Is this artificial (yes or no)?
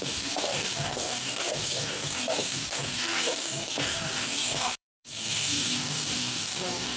yes